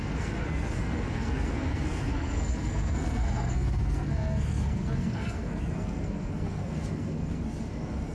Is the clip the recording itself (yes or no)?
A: no